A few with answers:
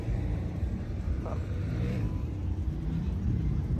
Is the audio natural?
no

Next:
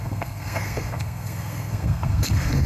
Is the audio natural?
no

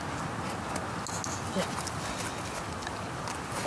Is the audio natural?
yes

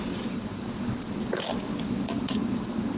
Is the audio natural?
yes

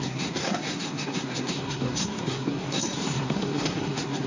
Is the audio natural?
no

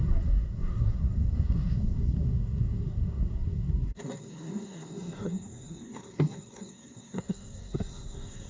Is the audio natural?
no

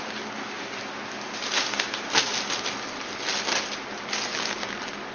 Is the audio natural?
yes